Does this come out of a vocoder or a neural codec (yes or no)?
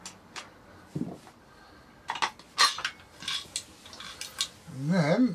no